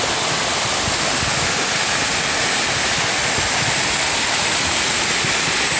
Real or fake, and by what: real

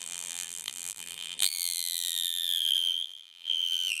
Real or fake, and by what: fake, vocoder, BigVGAN v2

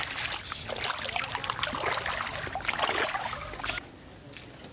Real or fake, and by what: real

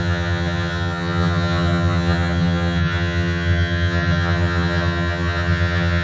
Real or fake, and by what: fake, vocoder, HiFi-GAN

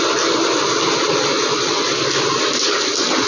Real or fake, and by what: real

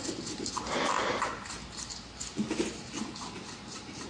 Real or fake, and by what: real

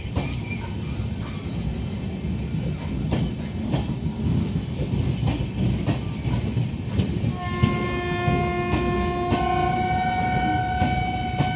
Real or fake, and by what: real